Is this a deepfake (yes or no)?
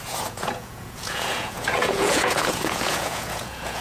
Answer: yes